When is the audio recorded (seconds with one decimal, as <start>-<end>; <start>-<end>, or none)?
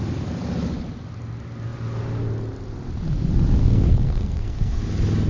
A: 0.0-3.6; 4.8-5.3